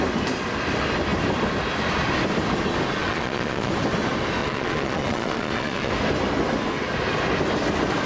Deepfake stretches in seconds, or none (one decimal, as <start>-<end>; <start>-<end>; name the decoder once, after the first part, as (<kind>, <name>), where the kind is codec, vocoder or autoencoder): 3.0-3.7 (vocoder, Vocos); 4.4-5.9